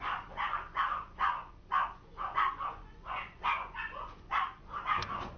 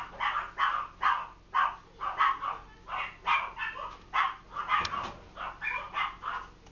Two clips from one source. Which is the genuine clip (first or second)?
second